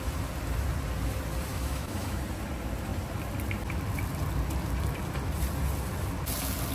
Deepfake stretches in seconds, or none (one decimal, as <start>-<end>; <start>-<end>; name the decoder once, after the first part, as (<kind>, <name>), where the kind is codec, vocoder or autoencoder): 1.5-2.2 (autoencoder, DAC-VAE)